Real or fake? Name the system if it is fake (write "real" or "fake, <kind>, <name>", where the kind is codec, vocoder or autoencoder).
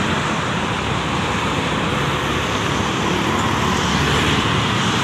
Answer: real